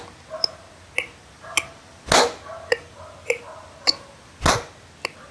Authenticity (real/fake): real